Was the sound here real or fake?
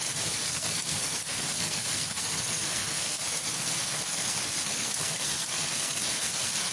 fake